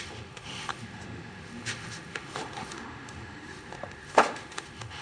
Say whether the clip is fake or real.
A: fake